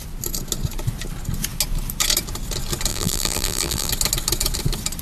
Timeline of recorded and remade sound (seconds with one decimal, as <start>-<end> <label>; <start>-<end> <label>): 0.0-2.9 recorded; 2.9-3.9 remade; 3.9-5.0 recorded

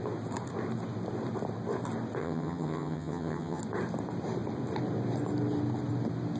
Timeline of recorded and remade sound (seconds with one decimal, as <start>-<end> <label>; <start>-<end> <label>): 0.0-2.2 recorded; 2.2-3.6 remade; 3.6-6.4 recorded

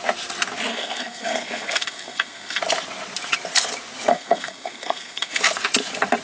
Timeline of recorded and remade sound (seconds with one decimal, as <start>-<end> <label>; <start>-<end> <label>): 0.0-0.7 recorded; 0.7-2.6 remade; 2.6-4.1 recorded; 4.1-5.4 remade; 5.4-6.2 recorded

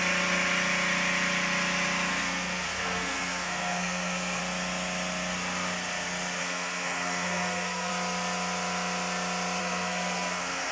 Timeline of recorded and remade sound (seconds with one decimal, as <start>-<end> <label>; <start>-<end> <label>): 0.0-2.1 recorded; 2.1-4.4 remade; 4.4-6.4 recorded; 6.4-7.9 remade; 7.9-9.6 recorded; 9.6-10.7 remade